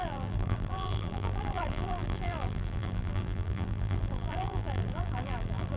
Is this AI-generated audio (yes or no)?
yes